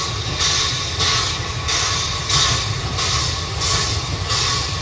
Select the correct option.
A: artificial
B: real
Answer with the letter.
B